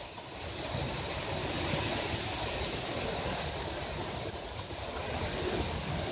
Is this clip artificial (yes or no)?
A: no